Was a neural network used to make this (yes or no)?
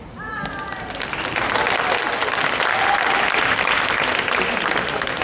no